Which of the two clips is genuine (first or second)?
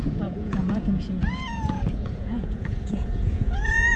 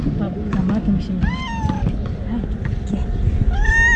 second